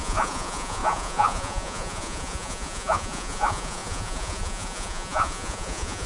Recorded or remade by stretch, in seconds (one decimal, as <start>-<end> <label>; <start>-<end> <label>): 0.0-6.1 remade